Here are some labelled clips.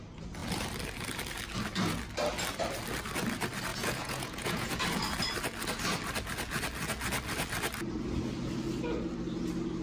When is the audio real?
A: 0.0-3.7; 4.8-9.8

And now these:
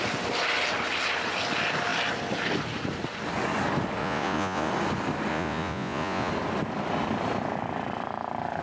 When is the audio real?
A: 0.0-4.0; 4.7-5.3; 6.3-8.6